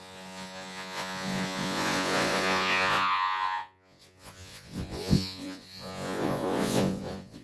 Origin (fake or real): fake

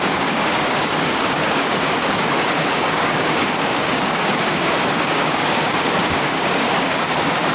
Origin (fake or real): fake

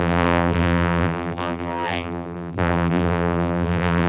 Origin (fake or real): fake